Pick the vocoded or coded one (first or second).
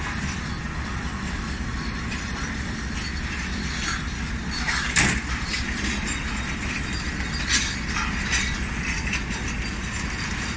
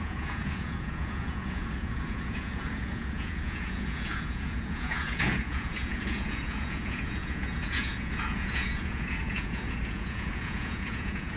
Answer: second